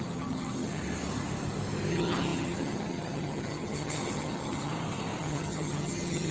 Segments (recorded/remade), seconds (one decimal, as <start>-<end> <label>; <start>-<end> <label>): 0.0-0.8 remade; 0.8-1.9 recorded; 1.9-4.7 remade; 4.7-5.2 recorded; 5.2-6.3 remade